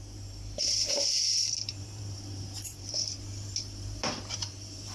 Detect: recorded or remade remade